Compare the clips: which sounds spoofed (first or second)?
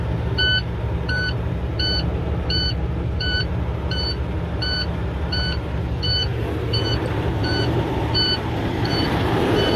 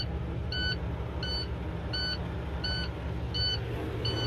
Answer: first